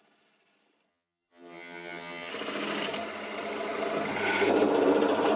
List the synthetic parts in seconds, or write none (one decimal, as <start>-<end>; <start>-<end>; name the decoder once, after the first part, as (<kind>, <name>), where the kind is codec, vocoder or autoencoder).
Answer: 0.9-2.3 (vocoder, HiFi-GAN)